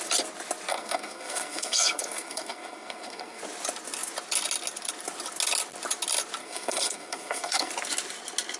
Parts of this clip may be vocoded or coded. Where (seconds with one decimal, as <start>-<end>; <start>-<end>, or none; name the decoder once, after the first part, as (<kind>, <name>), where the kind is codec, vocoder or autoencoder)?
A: 0.7-3.4 (codec, SNAC); 6.4-7.7